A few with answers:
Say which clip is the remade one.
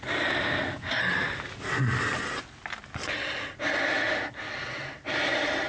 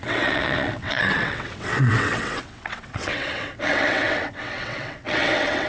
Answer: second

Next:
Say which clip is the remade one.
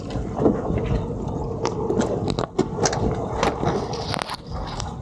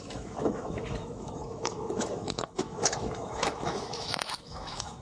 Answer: second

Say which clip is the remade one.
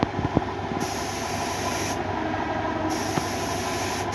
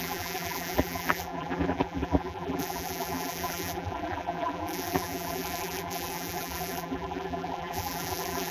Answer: second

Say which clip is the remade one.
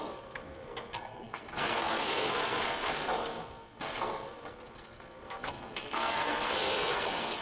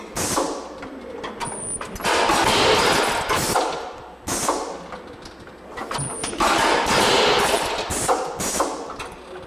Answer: first